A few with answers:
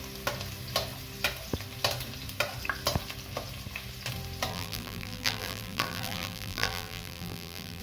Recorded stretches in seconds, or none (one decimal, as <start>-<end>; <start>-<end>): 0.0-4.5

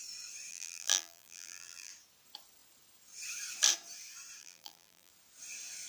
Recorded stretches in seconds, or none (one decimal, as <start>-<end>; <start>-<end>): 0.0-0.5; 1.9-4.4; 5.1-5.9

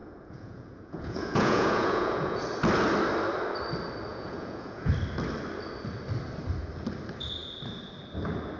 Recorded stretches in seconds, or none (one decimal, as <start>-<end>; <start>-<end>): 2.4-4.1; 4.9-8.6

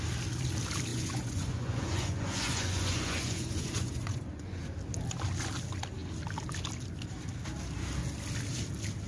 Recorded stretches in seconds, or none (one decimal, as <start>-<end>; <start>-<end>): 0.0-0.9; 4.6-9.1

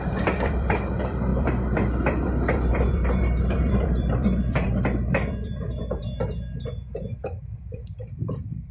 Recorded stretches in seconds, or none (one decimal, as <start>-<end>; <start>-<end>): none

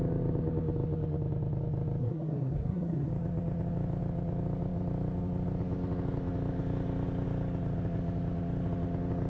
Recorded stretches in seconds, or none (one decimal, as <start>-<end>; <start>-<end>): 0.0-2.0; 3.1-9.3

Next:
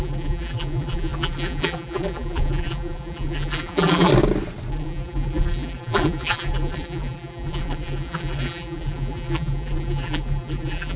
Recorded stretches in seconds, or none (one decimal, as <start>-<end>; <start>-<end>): 4.1-4.7